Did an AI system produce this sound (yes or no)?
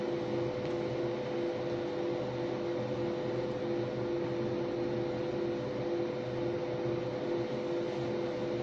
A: no